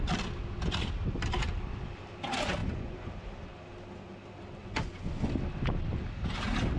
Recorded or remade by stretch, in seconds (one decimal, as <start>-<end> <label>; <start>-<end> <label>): 0.0-2.6 recorded; 2.6-3.1 remade; 3.1-4.6 recorded; 4.6-5.3 remade; 5.3-6.8 recorded